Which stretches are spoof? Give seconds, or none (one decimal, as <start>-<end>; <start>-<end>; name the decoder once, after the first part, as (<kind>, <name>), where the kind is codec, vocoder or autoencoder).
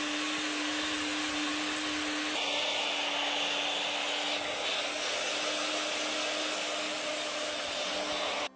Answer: none